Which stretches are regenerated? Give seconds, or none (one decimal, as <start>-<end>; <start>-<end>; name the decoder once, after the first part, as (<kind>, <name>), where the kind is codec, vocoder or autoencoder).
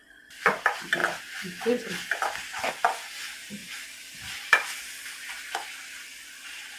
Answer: 3.6-4.8 (vocoder, BigVGAN v2)